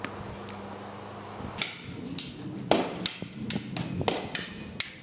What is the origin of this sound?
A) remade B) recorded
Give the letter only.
B